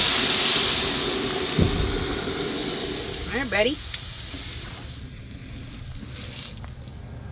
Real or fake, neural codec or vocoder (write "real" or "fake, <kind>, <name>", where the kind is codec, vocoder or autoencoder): real